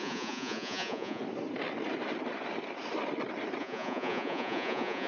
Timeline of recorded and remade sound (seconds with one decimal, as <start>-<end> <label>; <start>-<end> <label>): 0.0-1.2 remade; 1.2-3.6 recorded; 3.6-5.1 remade

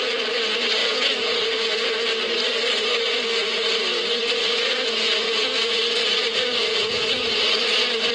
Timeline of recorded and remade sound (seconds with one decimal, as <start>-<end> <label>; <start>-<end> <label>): 0.0-0.8 recorded; 0.8-1.7 remade; 1.7-4.2 recorded; 4.2-7.5 remade; 7.5-8.1 recorded